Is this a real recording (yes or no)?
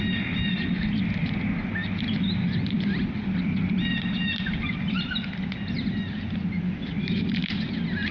yes